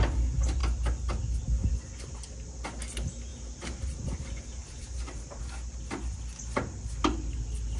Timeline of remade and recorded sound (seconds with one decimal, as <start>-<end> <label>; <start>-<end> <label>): 0.0-3.3 recorded; 3.3-5.4 remade; 5.4-7.8 recorded